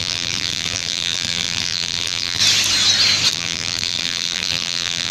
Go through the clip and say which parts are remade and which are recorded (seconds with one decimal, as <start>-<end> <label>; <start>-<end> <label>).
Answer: 0.0-2.4 remade; 2.4-3.3 recorded; 3.3-5.1 remade